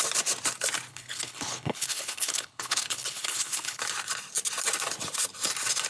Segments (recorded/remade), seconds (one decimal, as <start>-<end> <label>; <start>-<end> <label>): 0.0-0.9 recorded; 0.9-3.8 remade; 3.8-5.9 recorded